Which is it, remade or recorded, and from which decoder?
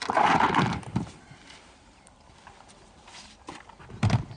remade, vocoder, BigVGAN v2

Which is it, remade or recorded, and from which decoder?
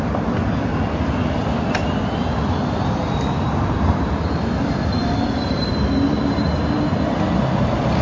remade, vocoder, BigVGAN v2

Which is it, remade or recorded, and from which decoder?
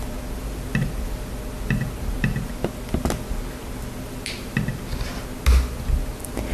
recorded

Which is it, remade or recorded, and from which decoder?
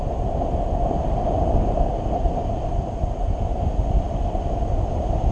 recorded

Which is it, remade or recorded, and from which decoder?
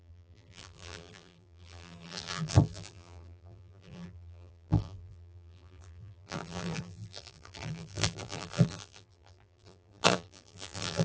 remade, vocoder, BigVGAN v2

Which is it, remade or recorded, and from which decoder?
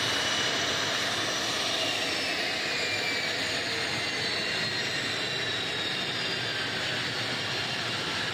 recorded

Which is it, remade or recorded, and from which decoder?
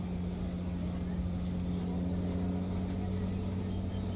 recorded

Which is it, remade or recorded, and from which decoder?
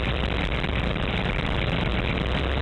remade, vocoder, BigVGAN v2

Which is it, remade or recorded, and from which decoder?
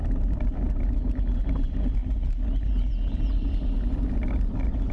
recorded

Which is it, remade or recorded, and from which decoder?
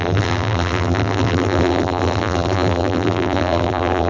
remade, vocoder, BigVGAN v2